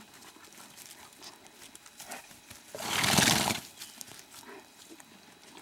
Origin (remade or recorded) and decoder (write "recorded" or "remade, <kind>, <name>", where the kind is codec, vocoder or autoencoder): recorded